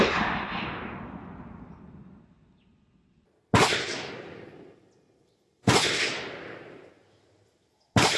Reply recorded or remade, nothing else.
recorded